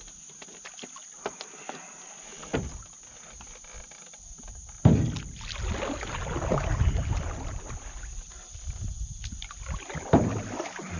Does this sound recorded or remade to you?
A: recorded